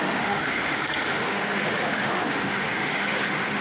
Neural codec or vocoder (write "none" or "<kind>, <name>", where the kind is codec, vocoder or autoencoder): autoencoder, DAC-VAE